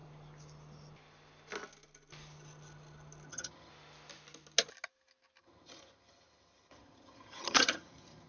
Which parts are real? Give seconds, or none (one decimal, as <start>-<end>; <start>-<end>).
0.0-3.3; 3.7-5.4